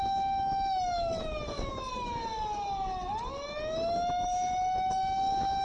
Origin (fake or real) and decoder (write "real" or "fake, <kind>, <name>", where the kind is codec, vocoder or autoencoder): fake, autoencoder, DAC-VAE